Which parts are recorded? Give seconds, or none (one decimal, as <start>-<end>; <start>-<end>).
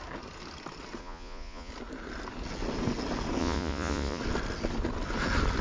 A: 0.0-1.0; 1.7-3.4; 4.2-5.6